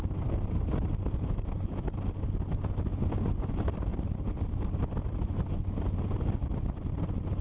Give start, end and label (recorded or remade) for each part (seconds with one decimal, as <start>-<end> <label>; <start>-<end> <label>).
0.0-7.4 recorded